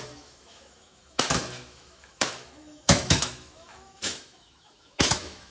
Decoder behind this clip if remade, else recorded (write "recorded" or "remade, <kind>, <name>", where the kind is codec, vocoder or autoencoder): remade, autoencoder, DAC-VAE